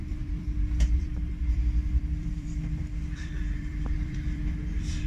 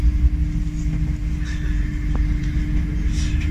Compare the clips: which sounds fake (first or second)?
first